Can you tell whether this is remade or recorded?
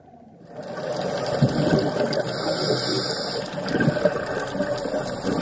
recorded